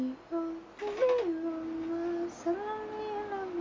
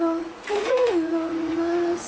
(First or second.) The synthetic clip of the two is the second